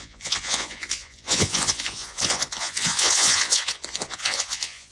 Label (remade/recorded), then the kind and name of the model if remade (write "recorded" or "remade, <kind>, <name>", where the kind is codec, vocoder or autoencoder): remade, vocoder, Vocos